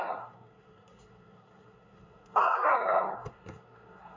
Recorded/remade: remade